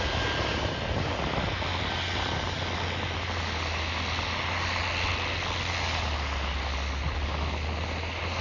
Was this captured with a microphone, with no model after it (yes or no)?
yes